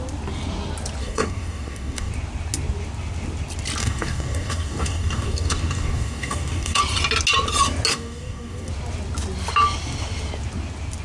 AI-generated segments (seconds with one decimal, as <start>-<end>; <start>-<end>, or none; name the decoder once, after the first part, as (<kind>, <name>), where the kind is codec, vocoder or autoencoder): 1.0-2.1 (codec, DAC); 3.8-6.8; 7.9-8.7